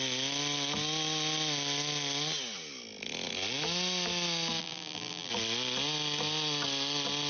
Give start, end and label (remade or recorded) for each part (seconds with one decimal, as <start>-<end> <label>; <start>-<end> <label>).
0.0-4.6 recorded; 4.6-5.3 remade; 5.3-7.3 recorded